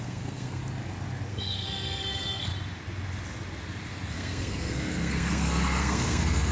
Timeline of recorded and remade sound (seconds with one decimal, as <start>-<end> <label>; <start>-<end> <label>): 0.0-0.6 remade; 0.6-1.3 recorded; 1.3-2.5 remade; 2.5-4.1 recorded; 4.1-6.5 remade